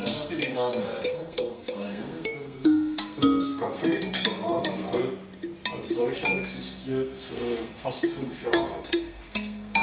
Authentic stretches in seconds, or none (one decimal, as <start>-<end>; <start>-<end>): 5.0-5.9